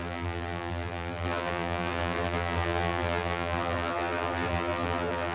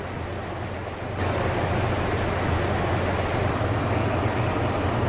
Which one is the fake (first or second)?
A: first